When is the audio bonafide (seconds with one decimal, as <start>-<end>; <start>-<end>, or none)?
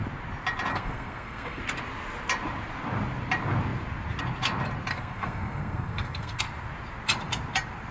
0.0-0.7; 1.6-4.9; 6.4-7.9